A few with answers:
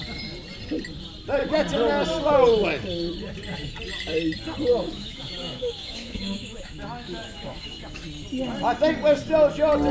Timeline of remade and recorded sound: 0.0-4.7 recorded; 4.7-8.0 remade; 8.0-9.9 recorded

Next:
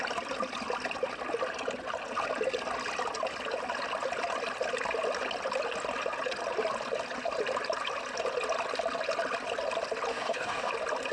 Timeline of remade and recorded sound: 0.0-10.1 recorded; 10.1-10.7 remade; 10.7-11.1 recorded

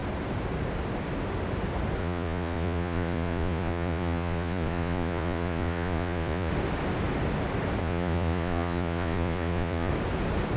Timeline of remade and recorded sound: 0.0-2.0 recorded; 2.0-6.5 remade; 6.5-7.8 recorded; 7.8-9.9 remade; 9.9-10.6 recorded

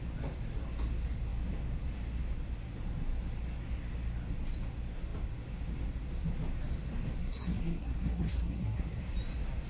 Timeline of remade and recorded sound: 0.0-7.2 recorded; 7.2-9.0 remade; 9.0-9.7 recorded